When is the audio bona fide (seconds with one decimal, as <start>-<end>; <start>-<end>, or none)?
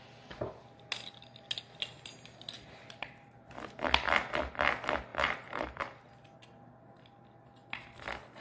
0.0-5.1; 5.8-8.4